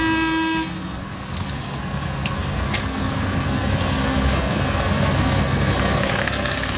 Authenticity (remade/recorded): remade